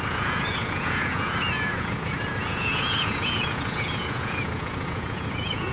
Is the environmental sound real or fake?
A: fake